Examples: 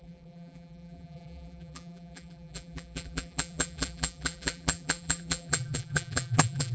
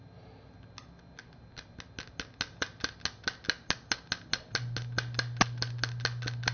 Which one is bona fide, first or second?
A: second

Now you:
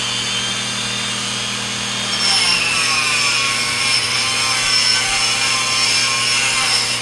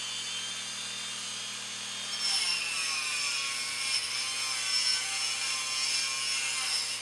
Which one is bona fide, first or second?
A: second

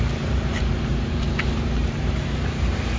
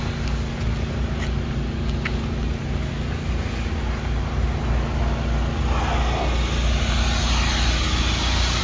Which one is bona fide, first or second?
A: second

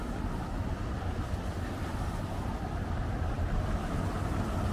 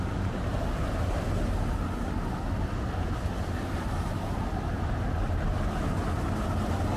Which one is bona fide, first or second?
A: second